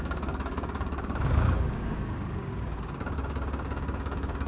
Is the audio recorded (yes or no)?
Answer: no